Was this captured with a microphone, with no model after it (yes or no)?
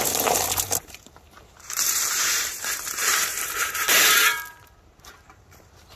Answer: no